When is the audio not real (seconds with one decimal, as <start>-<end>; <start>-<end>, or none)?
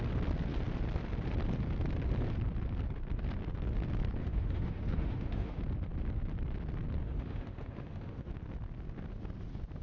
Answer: 4.2-5.6; 7.0-8.3